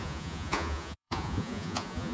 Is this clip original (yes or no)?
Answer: no